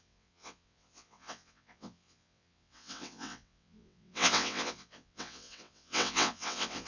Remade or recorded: remade